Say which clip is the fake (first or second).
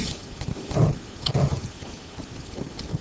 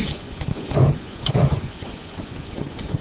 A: second